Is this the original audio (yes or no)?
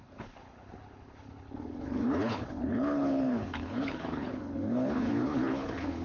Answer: no